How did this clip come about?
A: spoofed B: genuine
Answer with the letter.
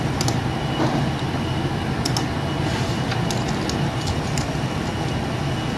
B